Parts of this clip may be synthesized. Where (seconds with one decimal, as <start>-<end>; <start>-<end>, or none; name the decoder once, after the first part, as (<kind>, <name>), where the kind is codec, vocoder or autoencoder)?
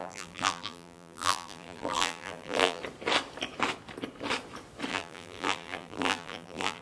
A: 0.0-2.8 (vocoder, BigVGAN v2); 4.9-6.8